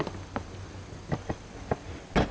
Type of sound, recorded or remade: recorded